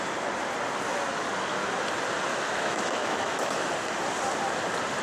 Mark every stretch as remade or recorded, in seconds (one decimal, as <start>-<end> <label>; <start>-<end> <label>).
0.0-2.3 recorded; 2.3-3.7 remade; 3.7-5.0 recorded